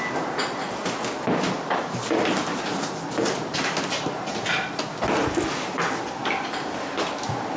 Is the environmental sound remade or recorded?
recorded